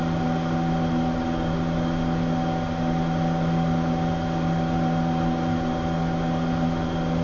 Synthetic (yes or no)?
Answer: no